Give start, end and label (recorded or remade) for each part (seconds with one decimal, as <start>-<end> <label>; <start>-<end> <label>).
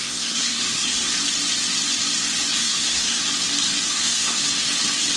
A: 0.0-1.1 remade; 1.1-2.6 recorded; 2.6-3.2 remade; 3.2-3.9 recorded; 3.9-4.4 remade; 4.4-5.2 recorded